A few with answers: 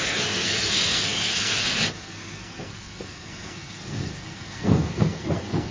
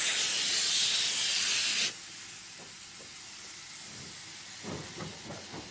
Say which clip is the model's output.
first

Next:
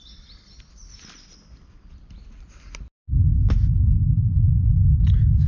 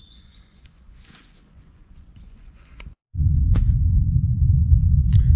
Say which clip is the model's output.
second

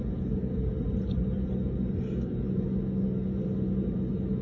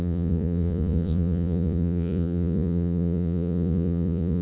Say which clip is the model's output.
second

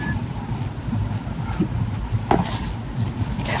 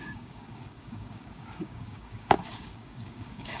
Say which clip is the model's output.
second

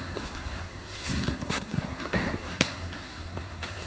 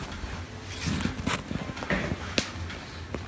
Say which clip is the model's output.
first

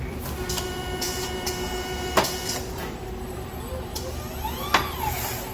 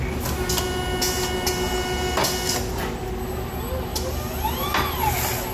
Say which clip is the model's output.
first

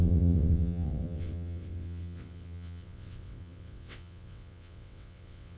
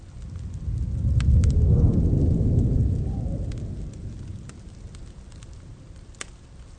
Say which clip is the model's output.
first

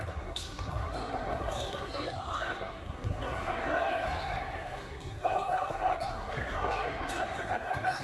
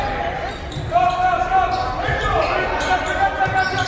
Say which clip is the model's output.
first